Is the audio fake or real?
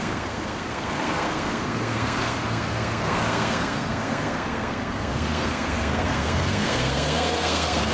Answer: fake